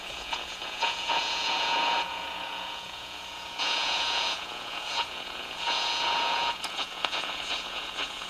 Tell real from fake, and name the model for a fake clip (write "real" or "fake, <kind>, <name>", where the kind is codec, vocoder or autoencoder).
fake, vocoder, Vocos